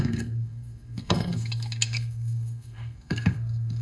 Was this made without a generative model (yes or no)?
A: no